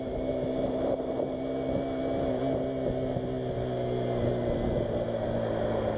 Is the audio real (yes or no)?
yes